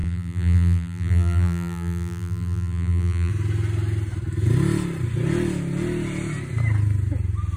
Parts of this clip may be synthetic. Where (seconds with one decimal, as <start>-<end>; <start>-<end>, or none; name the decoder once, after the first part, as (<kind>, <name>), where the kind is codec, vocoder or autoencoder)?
0.0-3.3 (vocoder, BigVGAN v2)